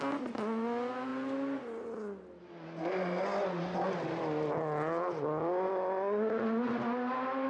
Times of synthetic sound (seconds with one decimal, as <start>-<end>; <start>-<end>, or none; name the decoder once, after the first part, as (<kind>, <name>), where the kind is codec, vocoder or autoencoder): none